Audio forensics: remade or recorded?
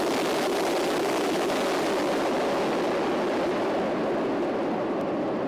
recorded